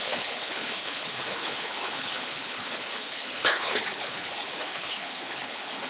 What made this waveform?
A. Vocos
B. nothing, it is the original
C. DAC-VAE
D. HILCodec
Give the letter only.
D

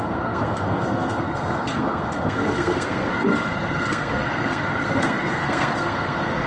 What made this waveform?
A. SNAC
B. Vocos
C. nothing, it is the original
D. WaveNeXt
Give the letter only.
A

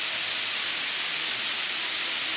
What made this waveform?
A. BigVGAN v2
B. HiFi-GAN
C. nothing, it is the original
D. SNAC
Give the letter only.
C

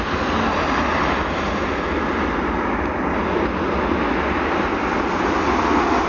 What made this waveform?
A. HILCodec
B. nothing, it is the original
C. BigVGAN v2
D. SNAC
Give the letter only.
B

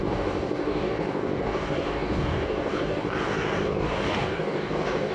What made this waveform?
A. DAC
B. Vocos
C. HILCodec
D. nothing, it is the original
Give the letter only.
A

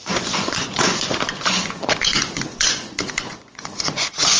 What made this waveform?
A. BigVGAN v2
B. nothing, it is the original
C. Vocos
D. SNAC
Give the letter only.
C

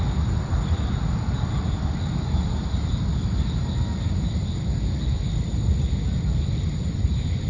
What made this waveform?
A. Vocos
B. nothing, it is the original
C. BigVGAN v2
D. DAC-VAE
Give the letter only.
C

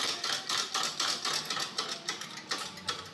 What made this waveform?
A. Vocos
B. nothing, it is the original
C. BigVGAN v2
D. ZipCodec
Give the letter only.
B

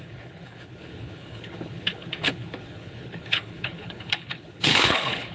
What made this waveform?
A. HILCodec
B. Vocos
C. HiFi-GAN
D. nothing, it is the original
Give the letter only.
A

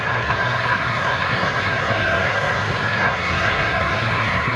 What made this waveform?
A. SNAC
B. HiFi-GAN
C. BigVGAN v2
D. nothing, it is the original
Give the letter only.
A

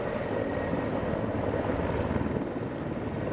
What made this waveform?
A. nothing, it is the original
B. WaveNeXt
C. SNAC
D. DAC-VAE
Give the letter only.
A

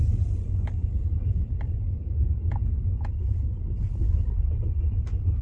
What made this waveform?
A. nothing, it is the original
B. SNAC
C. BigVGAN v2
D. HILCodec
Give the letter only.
A